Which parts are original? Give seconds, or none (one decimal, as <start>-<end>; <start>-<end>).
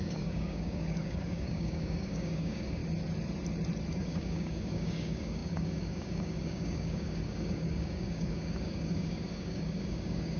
2.8-3.9